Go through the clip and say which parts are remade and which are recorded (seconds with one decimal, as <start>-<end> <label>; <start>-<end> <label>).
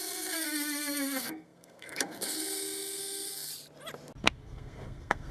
0.0-3.5 remade; 3.5-4.2 recorded; 4.2-5.3 remade